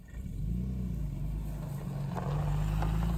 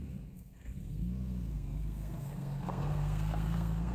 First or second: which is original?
first